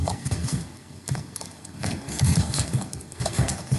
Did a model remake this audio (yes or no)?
yes